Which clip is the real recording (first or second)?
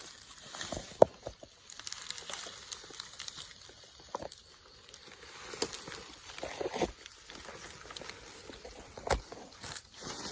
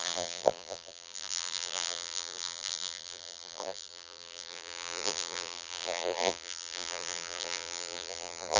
first